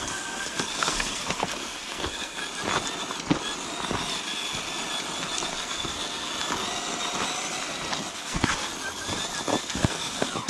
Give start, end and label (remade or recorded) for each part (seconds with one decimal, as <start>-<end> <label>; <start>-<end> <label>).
0.0-2.4 remade; 2.4-5.5 recorded; 5.5-6.3 remade; 6.3-8.1 recorded; 8.1-8.7 remade; 8.7-9.6 recorded; 9.6-10.5 remade